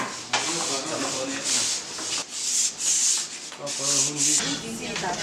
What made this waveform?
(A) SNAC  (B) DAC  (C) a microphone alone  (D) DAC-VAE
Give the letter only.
C